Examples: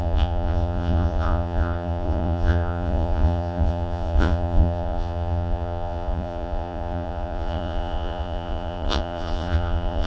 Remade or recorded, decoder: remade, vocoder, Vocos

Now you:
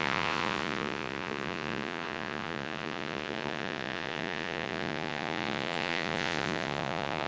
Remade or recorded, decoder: remade, vocoder, Vocos